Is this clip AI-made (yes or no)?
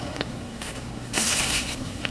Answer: yes